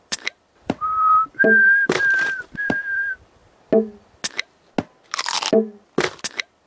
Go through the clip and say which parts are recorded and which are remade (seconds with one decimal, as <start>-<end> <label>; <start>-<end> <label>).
0.0-3.4 remade; 3.4-6.7 recorded